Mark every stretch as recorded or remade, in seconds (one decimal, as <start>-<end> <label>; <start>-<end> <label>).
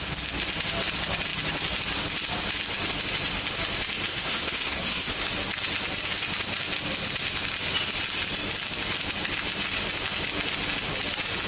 0.0-4.1 recorded; 4.1-5.2 remade; 5.2-11.5 recorded